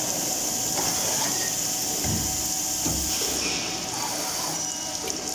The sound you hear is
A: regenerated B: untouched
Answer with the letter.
B